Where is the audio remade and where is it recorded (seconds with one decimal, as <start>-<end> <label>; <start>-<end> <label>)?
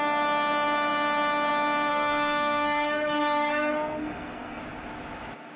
0.0-1.9 recorded; 1.9-4.6 remade; 4.6-5.6 recorded